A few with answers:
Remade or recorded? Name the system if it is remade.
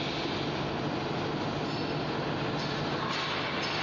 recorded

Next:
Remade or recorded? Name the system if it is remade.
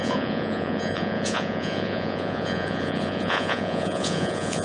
remade, vocoder, Vocos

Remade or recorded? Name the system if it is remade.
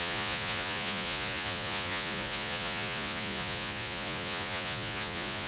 remade, vocoder, Vocos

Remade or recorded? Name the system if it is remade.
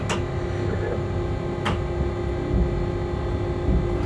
recorded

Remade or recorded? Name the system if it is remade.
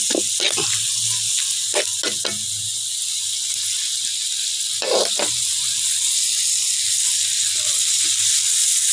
recorded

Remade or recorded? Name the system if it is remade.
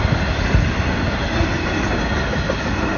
recorded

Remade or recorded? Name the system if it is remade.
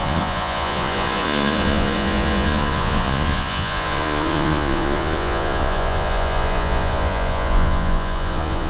remade, vocoder, Vocos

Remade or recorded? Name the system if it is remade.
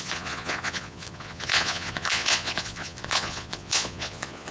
remade, vocoder, Vocos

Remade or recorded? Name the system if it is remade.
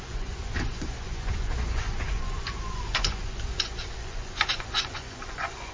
remade, vocoder, Vocos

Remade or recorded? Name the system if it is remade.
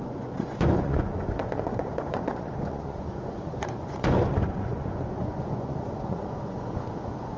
remade, vocoder, Vocos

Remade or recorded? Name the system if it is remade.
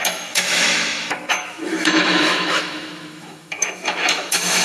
remade, autoencoder, DAC-VAE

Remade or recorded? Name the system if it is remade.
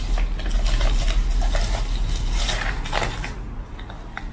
recorded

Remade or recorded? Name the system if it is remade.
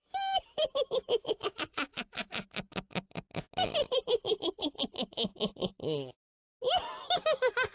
recorded